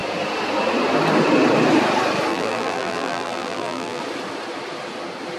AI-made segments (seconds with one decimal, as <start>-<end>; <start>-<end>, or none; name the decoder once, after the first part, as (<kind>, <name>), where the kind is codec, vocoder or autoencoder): 2.3-4.0 (vocoder, BigVGAN v2)